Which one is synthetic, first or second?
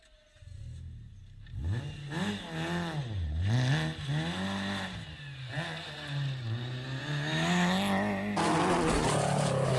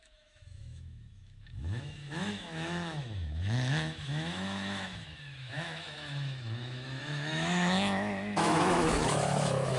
second